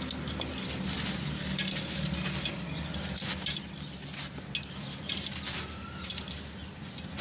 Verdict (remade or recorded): recorded